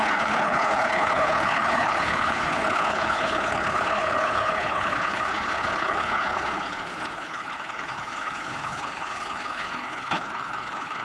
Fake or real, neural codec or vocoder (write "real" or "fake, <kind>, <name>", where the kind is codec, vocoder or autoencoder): fake, codec, HILCodec